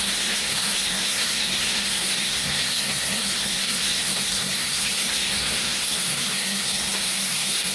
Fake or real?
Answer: fake